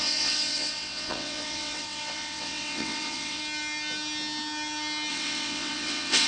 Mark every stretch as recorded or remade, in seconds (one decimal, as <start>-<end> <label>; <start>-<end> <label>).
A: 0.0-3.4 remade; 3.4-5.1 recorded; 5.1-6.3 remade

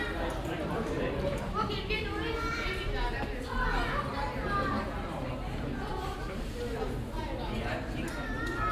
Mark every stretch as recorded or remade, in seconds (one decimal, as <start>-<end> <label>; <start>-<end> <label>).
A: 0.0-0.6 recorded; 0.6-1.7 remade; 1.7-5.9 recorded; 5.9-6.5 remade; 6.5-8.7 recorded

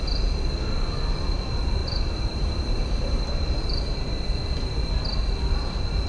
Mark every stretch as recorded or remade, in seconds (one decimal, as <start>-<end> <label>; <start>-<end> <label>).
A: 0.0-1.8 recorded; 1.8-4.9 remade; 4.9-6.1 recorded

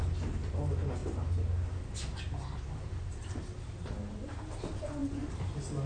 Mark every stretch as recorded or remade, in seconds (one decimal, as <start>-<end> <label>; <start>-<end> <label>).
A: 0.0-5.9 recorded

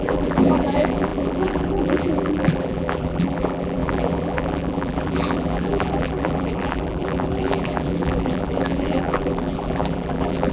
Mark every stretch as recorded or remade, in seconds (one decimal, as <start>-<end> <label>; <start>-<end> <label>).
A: 0.0-10.5 remade